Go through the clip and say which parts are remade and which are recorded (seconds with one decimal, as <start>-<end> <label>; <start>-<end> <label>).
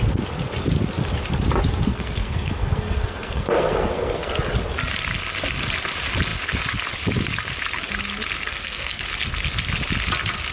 0.0-1.9 recorded; 1.9-4.3 remade; 4.3-8.5 recorded; 8.5-9.0 remade; 9.0-10.5 recorded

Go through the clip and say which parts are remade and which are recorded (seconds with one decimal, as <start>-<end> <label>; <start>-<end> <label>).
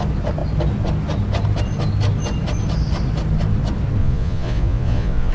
0.0-4.0 recorded; 4.0-5.3 remade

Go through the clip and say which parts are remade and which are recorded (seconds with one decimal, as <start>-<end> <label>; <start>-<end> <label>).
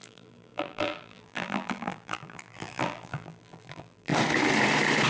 0.0-4.1 remade; 4.1-5.1 recorded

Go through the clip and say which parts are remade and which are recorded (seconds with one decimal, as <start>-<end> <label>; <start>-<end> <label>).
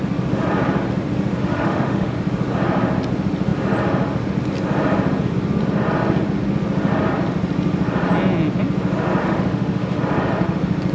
0.0-1.4 recorded; 1.4-2.2 remade; 2.2-9.2 recorded; 9.2-10.0 remade; 10.0-10.9 recorded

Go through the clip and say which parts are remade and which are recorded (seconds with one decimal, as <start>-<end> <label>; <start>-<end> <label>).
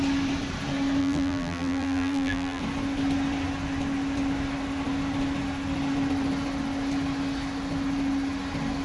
0.0-1.0 recorded; 1.0-2.6 remade; 2.6-8.8 recorded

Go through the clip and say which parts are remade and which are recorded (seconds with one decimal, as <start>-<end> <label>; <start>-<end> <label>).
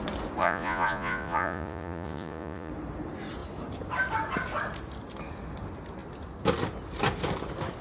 0.0-0.4 recorded; 0.4-2.7 remade; 2.7-7.8 recorded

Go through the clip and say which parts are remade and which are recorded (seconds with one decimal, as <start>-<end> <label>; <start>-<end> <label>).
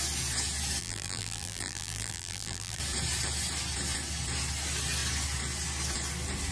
0.0-0.8 recorded; 0.8-2.8 remade; 2.8-6.5 recorded